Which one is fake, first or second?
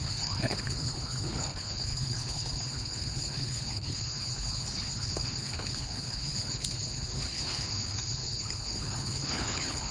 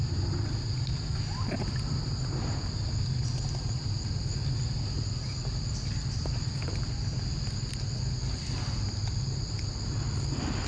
first